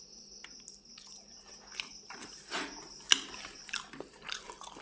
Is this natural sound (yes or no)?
yes